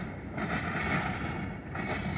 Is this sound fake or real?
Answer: real